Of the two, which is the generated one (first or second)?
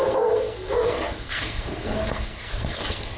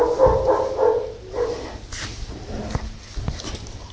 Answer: first